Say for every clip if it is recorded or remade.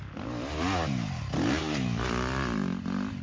recorded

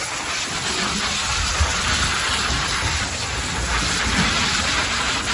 recorded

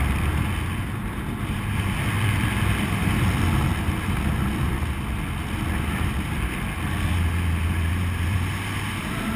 recorded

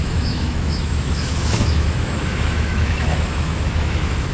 remade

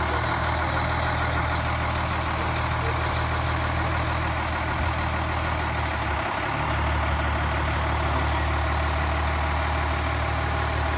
recorded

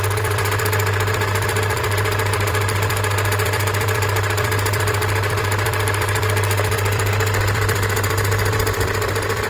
remade